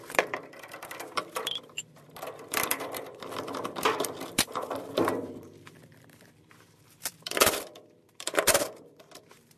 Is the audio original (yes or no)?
no